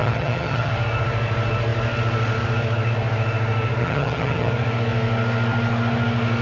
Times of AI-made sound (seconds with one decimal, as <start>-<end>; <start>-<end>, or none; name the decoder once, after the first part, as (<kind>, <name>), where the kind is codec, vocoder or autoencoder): 0.0-0.7 (vocoder, HiFi-GAN); 3.8-4.5